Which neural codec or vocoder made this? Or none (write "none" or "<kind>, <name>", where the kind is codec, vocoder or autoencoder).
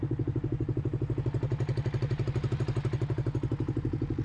none